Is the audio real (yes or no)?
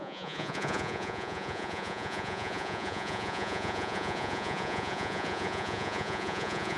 no